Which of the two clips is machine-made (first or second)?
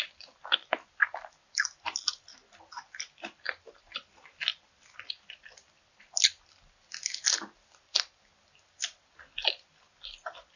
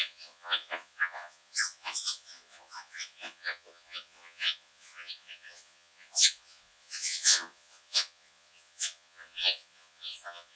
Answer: second